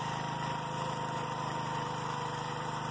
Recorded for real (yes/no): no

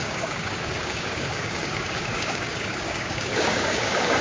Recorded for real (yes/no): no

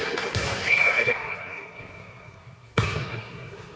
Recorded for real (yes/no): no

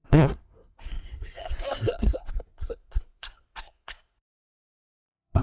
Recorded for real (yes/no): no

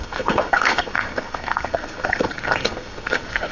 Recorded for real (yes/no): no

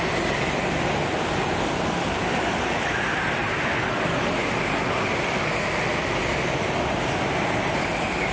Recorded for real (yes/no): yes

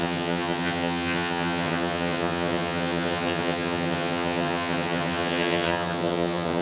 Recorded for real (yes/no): no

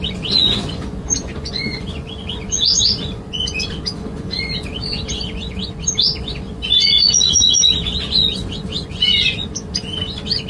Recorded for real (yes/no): no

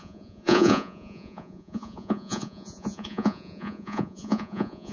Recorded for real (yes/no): no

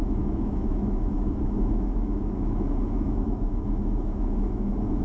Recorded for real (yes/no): no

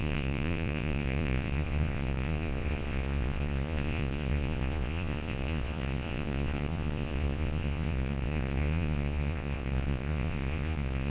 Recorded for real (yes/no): no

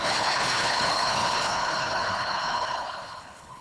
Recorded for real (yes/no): no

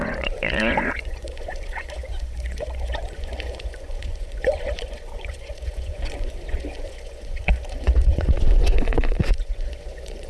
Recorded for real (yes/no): no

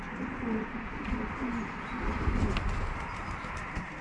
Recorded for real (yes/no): yes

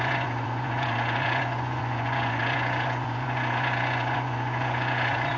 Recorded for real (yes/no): no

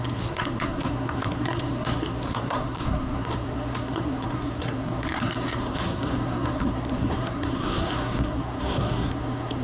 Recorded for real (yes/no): no